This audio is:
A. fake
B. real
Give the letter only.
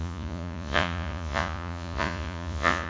A